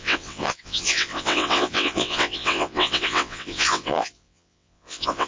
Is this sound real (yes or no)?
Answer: no